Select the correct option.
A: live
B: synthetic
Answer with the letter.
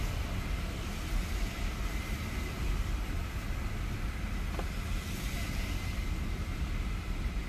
A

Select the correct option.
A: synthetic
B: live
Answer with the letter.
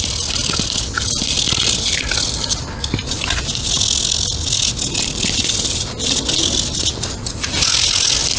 B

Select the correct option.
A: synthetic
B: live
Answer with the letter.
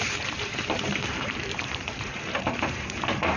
A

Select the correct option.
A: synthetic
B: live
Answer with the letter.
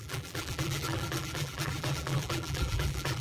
A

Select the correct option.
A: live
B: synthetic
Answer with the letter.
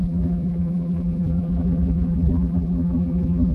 B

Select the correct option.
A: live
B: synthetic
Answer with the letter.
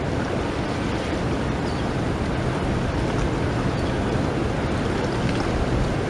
A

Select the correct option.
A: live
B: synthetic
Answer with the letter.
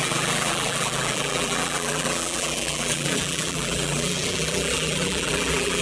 B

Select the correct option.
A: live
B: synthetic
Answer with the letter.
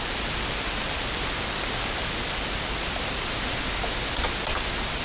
A